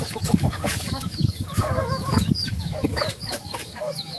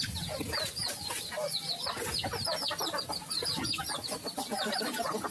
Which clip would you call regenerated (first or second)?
first